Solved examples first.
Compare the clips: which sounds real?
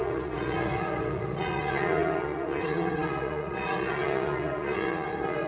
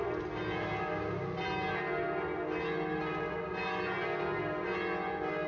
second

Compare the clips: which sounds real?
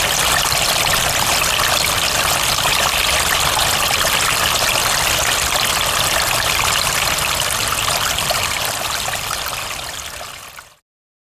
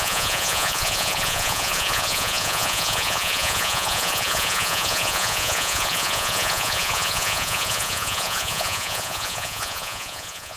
first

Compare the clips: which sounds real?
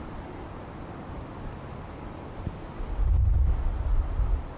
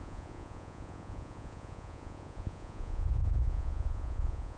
first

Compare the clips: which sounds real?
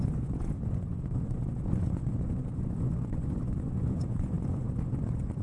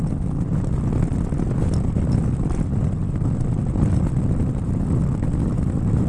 second